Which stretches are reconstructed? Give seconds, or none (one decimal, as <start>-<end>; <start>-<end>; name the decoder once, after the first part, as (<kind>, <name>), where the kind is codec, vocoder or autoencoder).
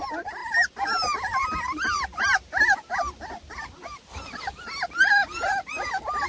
none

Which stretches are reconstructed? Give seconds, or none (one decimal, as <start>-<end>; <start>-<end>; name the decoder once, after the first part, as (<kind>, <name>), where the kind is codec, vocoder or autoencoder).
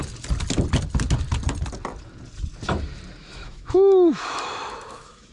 3.2-5.3 (autoencoder, DAC-VAE)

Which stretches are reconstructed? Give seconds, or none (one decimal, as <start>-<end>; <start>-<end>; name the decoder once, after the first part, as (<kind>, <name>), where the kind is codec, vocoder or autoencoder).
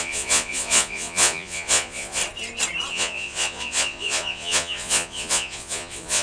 0.0-2.2 (vocoder, Vocos); 2.9-6.2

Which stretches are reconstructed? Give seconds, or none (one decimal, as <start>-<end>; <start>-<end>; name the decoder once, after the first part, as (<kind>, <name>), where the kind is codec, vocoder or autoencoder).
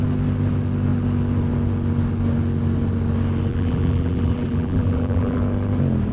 3.5-5.4 (vocoder, BigVGAN v2)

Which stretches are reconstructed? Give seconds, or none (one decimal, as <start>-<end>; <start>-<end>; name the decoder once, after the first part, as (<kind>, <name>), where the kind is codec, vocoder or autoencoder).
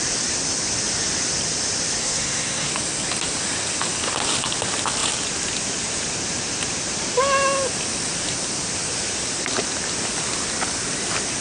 2.0-2.7 (codec, SNAC)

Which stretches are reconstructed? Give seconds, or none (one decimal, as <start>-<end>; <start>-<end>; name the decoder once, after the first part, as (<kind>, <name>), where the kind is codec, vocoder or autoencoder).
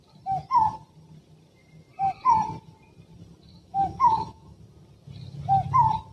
3.5-4.6 (autoencoder, DAC-VAE)